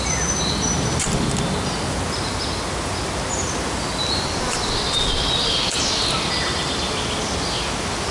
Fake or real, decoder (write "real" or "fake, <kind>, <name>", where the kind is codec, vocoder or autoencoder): real